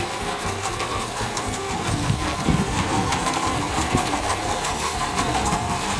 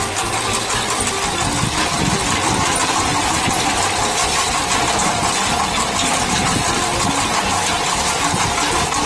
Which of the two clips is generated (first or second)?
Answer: first